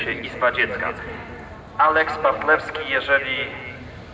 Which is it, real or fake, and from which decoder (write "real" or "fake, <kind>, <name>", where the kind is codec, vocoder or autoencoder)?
real